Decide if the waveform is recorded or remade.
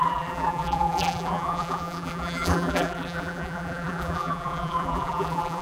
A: remade